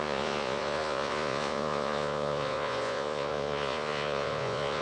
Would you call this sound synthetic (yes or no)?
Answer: yes